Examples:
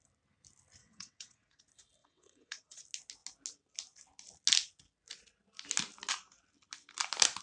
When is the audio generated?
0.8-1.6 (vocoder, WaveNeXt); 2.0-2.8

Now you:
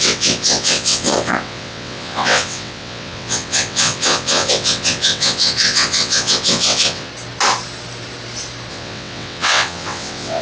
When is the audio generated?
0.0-7.1 (vocoder, WaveNeXt); 8.7-10.4